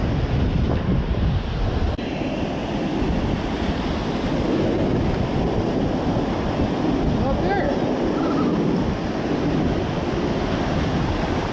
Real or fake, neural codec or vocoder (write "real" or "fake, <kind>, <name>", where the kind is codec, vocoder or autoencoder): real